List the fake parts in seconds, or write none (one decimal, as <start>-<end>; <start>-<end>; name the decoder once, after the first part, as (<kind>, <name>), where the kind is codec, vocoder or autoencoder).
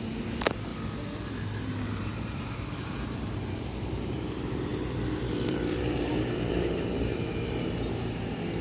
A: 0.0-0.7 (vocoder, BigVGAN v2); 2.0-8.6